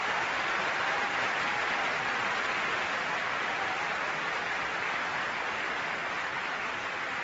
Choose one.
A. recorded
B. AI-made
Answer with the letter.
A